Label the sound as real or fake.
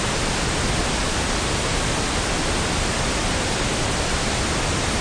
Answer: real